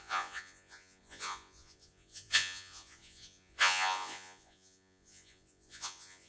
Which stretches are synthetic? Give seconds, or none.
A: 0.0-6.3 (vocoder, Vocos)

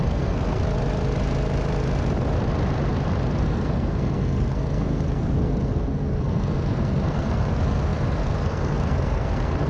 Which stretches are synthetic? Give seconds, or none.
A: 0.0-0.6 (codec, SNAC); 3.3-9.7

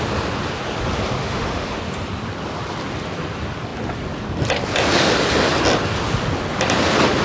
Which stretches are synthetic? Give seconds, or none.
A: 1.2-1.8 (autoencoder, DAC-VAE)

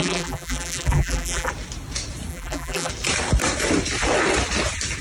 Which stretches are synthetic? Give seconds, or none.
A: 0.0-1.5 (vocoder, BigVGAN v2); 2.3-2.9

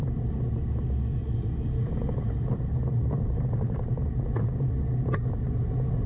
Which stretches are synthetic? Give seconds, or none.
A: 1.2-4.7 (vocoder, BigVGAN v2)